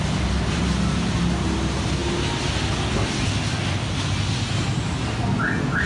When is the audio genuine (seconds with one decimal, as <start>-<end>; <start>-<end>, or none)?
0.0-5.9